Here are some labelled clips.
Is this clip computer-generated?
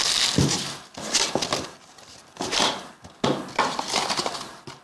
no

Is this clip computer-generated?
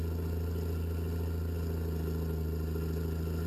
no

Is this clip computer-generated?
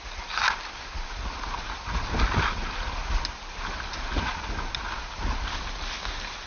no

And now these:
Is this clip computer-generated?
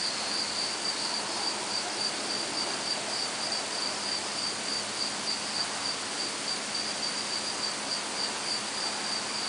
yes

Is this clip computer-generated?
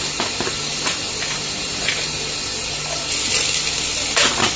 no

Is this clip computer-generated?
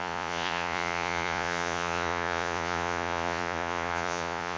yes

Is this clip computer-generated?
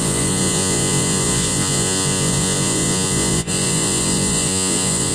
yes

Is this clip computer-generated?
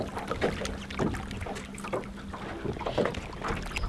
no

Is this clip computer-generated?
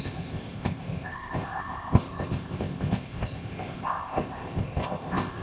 yes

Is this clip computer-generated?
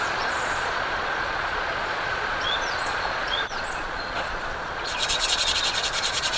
yes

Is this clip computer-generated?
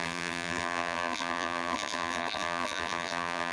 yes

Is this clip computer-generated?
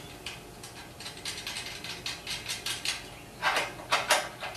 no